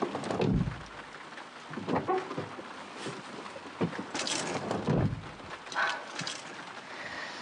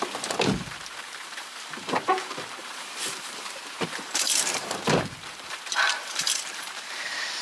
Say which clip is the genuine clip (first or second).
first